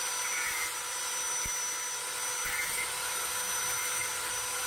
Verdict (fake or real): real